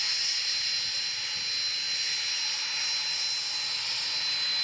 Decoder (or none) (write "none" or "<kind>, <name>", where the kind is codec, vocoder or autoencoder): none